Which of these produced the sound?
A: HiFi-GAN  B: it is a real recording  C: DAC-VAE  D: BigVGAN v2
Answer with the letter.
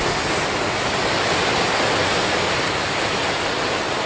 B